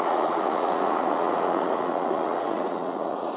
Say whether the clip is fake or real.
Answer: fake